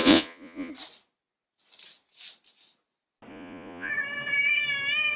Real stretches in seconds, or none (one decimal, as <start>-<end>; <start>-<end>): 0.7-3.3; 3.9-5.2